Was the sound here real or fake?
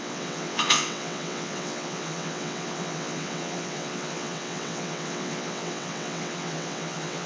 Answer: fake